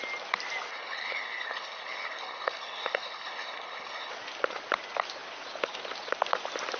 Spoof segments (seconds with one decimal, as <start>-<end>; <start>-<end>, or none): 0.7-4.1